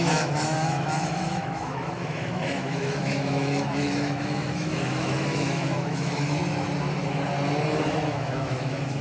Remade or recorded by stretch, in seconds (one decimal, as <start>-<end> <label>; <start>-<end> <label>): 0.0-6.4 remade; 6.4-7.9 recorded; 7.9-9.0 remade